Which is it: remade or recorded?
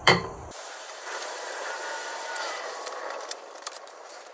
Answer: remade